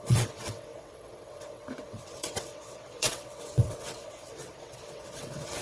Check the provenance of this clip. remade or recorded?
remade